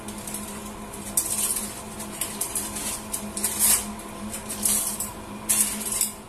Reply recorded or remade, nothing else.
recorded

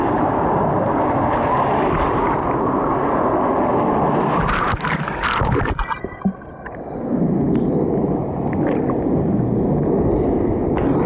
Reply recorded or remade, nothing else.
recorded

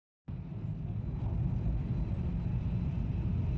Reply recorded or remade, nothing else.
recorded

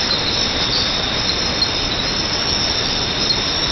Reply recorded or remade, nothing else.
recorded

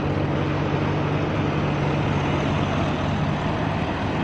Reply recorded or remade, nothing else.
recorded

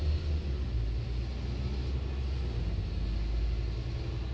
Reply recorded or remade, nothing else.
recorded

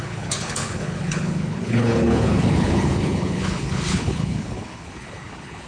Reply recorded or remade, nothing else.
remade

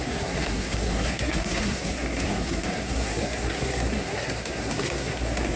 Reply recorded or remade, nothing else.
remade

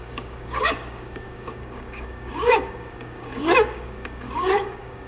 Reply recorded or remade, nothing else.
remade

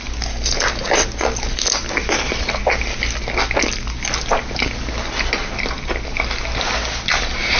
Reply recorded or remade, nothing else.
recorded